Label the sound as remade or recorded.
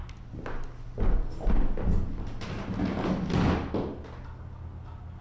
recorded